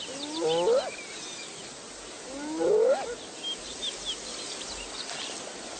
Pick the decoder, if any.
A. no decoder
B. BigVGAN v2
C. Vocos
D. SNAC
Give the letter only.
A